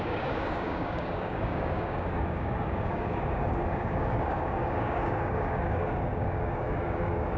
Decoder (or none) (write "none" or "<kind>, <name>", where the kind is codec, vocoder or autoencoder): codec, DAC